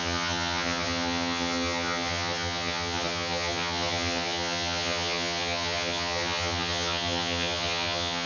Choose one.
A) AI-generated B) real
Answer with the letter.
A